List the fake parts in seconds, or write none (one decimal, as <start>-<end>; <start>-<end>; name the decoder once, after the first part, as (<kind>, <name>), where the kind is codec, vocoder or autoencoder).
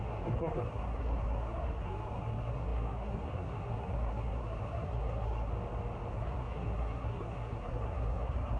0.0-5.5 (codec, SNAC); 6.1-8.6